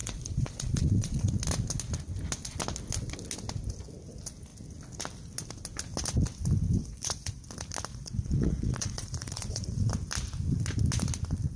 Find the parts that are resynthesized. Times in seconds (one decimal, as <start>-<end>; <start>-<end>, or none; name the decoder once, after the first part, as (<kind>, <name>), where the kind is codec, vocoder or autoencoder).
0.0-1.3 (vocoder, Vocos); 6.8-7.4; 7.9-9.9